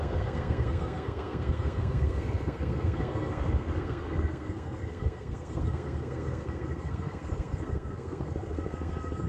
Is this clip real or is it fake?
fake